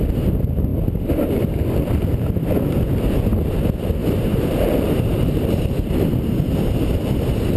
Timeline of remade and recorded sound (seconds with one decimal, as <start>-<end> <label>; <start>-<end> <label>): 0.0-4.0 recorded; 4.0-5.9 remade; 5.9-7.6 recorded